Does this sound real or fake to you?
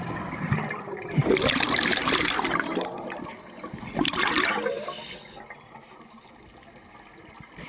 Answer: real